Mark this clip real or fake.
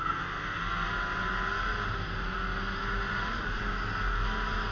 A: real